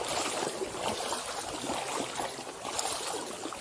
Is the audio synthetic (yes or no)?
no